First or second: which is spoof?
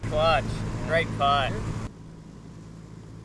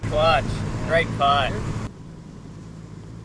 second